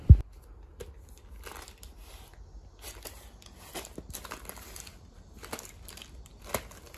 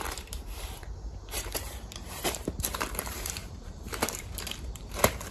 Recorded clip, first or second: first